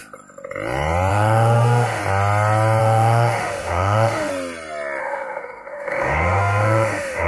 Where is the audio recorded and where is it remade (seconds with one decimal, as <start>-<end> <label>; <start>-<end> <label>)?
0.0-1.1 recorded; 1.1-2.0 remade; 2.0-2.8 recorded; 2.8-4.3 remade; 4.3-5.0 recorded; 5.0-7.3 remade